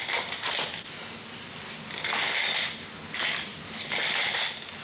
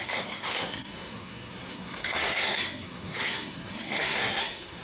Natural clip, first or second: first